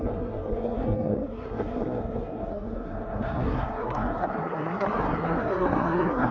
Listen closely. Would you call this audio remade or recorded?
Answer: remade